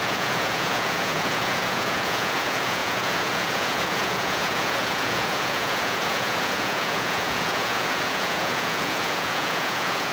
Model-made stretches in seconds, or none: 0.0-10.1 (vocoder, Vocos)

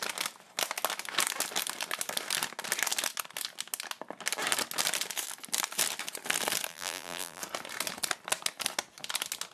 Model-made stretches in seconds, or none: 6.7-7.4 (vocoder, BigVGAN v2)

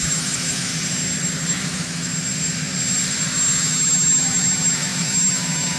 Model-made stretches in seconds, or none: 0.0-0.7 (autoencoder, DAC-VAE); 1.5-2.1; 3.6-5.8